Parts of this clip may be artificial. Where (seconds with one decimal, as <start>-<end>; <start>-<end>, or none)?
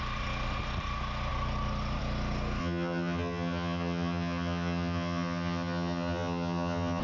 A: 2.6-7.0